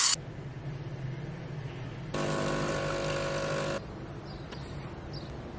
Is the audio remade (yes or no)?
no